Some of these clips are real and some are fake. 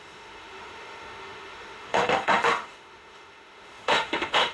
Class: fake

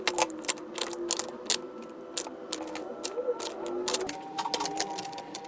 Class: real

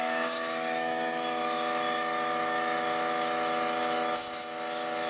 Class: fake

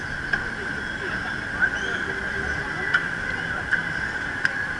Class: real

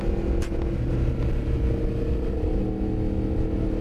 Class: real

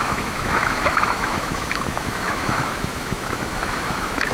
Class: fake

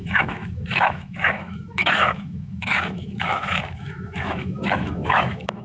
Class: fake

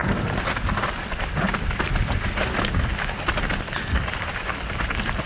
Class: real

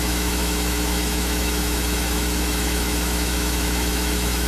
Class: fake